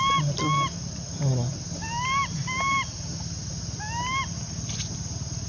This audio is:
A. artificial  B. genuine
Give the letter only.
B